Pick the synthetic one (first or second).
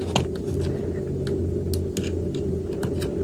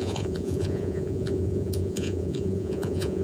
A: second